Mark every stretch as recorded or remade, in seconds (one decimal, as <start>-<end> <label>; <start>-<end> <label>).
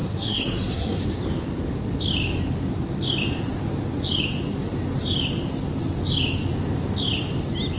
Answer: 0.0-1.0 remade; 1.0-7.8 recorded